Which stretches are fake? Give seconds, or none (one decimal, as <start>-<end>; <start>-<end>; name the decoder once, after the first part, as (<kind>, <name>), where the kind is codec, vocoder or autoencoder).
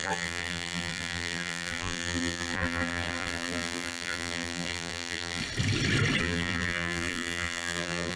0.0-5.4 (vocoder, BigVGAN v2); 6.2-8.2